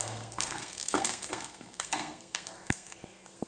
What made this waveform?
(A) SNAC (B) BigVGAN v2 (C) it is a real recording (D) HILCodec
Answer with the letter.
A